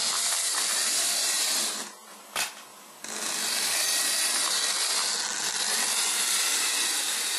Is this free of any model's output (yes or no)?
yes